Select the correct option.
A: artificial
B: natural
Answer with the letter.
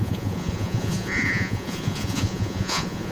A